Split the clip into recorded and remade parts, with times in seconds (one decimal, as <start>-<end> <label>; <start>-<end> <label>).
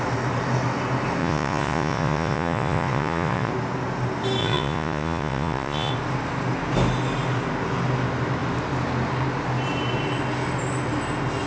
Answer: 0.0-1.2 recorded; 1.2-3.5 remade; 3.5-4.4 recorded; 4.4-5.9 remade; 5.9-11.5 recorded